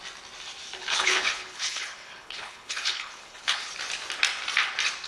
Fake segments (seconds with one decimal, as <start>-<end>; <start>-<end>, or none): 0.8-3.7